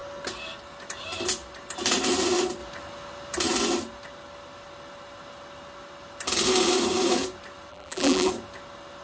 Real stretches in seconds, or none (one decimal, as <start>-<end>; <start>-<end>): 0.0-7.7; 8.3-9.0